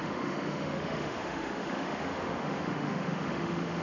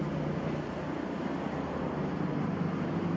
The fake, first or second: first